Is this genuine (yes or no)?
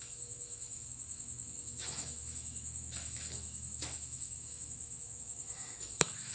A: no